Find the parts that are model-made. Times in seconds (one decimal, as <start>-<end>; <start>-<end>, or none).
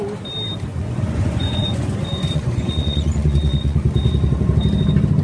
0.7-3.8